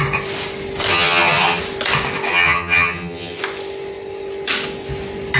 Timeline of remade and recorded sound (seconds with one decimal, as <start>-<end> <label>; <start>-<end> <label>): 0.0-0.9 recorded; 0.9-1.6 remade; 1.6-2.3 recorded; 2.3-3.4 remade; 3.4-5.4 recorded